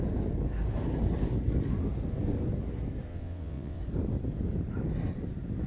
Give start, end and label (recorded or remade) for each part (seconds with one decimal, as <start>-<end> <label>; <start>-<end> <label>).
0.0-3.1 recorded; 3.1-3.8 remade; 3.8-5.7 recorded